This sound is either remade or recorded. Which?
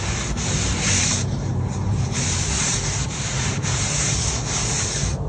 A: remade